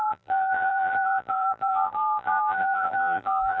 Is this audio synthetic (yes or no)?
yes